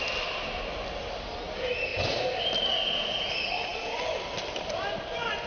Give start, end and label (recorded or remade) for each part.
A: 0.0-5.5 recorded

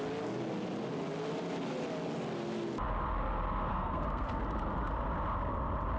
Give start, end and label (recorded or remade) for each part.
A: 0.0-3.7 recorded; 3.7-4.4 remade; 4.4-6.0 recorded

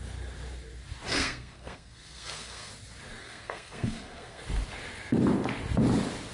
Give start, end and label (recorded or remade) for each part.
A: 0.0-1.1 recorded; 1.1-2.7 remade; 2.7-3.2 recorded; 3.2-4.4 remade; 4.4-6.3 recorded

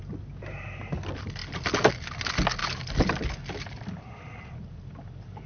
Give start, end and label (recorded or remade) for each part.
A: 0.0-5.5 recorded

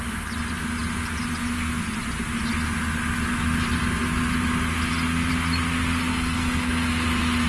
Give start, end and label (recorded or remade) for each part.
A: 0.0-6.1 recorded; 6.1-6.9 remade; 6.9-7.5 recorded

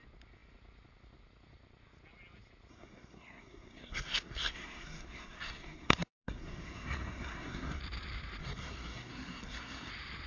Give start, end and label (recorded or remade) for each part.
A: 0.0-2.7 recorded; 2.7-7.8 remade; 7.8-8.4 recorded; 8.4-9.9 remade; 9.9-10.3 recorded

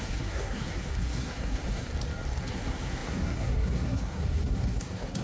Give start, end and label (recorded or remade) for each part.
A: 0.0-1.9 remade; 1.9-2.4 recorded; 2.4-5.2 remade